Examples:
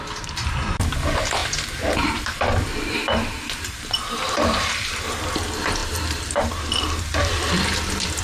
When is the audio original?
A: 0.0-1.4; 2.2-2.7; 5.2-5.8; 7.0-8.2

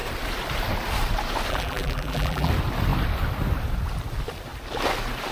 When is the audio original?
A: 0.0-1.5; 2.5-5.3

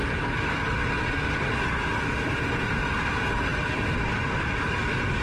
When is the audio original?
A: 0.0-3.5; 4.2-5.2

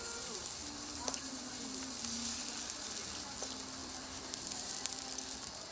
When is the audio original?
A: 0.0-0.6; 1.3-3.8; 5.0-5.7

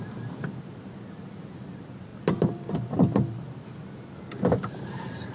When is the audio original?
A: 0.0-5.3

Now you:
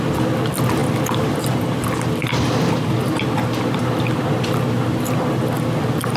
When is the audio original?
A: 0.0-6.2

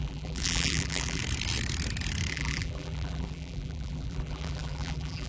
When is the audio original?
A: 1.2-2.3

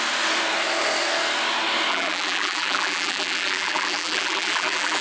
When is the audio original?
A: 0.0-1.9